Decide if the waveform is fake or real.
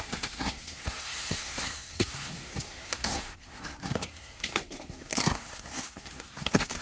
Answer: fake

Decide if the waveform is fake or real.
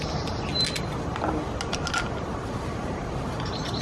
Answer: real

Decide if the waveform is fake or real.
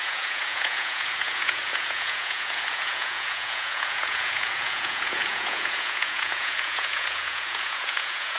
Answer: fake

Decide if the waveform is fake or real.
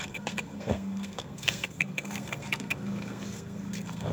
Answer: fake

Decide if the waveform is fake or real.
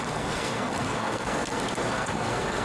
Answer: fake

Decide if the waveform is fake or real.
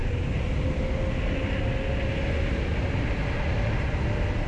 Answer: real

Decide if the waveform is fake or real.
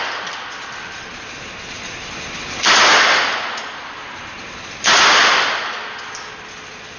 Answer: real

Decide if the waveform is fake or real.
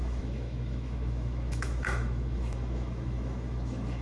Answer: fake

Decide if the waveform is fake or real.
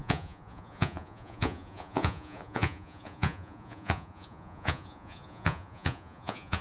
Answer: fake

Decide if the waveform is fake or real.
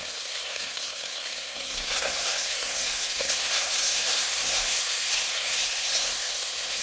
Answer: fake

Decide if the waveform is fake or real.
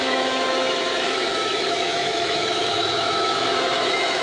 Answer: fake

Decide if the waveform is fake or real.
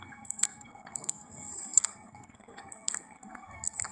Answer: fake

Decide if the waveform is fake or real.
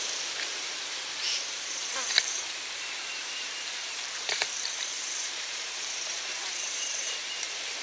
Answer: fake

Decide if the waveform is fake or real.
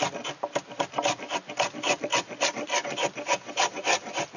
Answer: real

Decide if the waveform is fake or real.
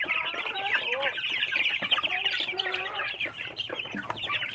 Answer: fake